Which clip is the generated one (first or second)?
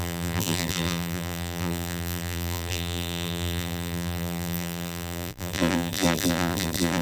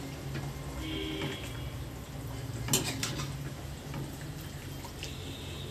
first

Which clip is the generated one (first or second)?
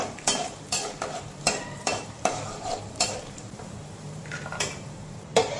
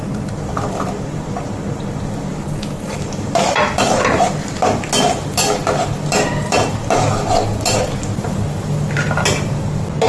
first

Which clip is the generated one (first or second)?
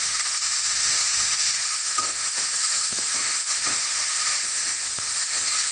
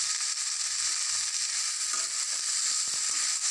first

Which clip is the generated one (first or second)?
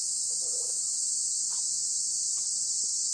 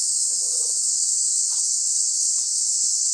second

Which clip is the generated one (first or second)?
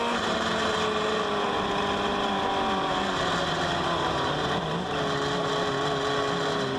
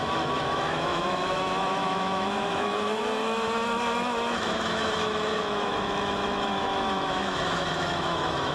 second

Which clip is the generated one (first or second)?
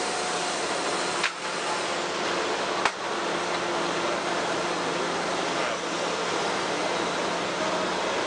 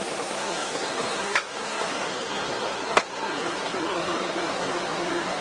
second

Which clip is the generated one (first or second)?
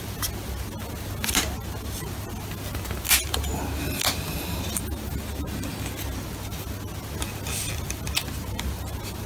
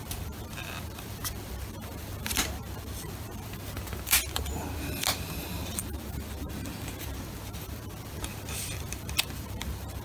second